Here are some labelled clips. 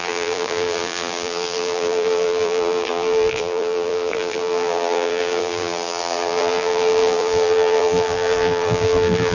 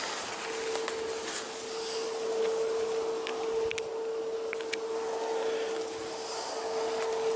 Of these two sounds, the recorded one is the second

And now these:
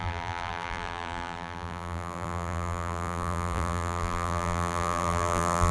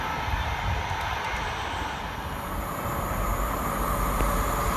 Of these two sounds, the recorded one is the second